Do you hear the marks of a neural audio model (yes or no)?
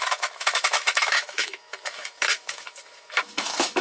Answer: yes